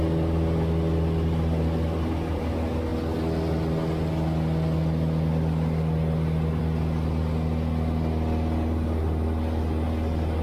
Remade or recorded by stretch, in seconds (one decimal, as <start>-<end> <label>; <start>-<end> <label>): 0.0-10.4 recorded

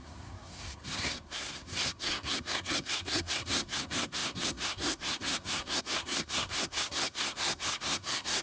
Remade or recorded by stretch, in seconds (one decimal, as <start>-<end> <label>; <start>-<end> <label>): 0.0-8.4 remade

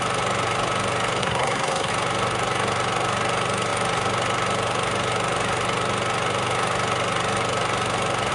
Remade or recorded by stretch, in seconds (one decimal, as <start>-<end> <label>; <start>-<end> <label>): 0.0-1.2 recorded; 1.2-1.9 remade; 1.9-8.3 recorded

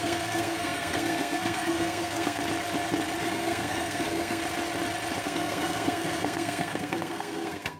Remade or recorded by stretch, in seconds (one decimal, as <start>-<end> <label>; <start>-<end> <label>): 0.0-2.4 remade; 2.4-3.2 recorded; 3.2-4.4 remade; 4.4-5.2 recorded; 5.2-7.8 remade

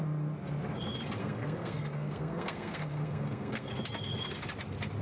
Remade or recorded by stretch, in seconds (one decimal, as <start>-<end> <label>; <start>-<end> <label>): 0.0-1.2 recorded; 1.2-3.7 remade; 3.7-5.0 recorded